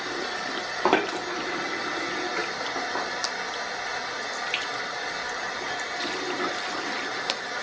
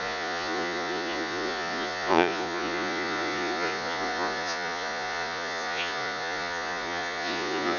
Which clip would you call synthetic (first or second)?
second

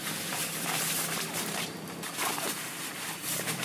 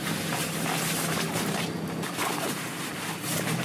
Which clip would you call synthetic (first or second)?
first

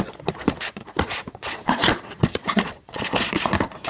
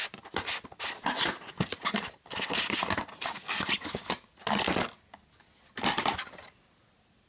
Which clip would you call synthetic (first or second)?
first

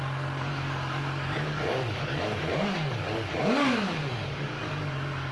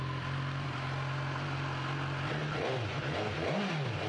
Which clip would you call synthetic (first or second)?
first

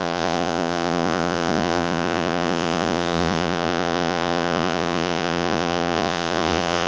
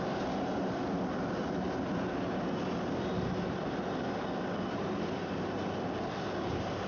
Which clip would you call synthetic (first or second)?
first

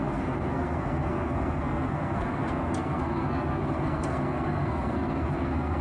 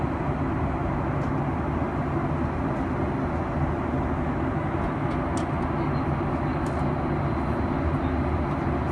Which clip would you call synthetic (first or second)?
first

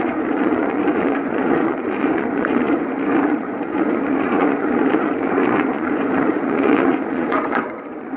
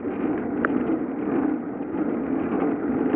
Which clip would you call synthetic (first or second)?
first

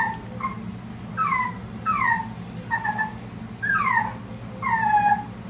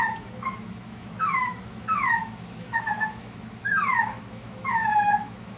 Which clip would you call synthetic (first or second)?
second